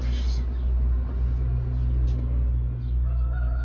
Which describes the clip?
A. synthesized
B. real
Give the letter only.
B